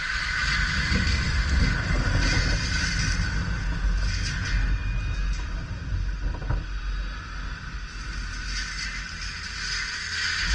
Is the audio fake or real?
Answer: real